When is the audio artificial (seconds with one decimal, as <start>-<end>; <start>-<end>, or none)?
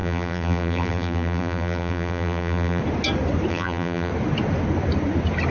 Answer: 0.0-2.8; 3.5-4.1